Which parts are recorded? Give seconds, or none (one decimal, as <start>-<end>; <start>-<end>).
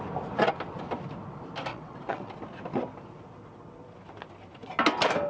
0.0-1.7; 2.3-5.3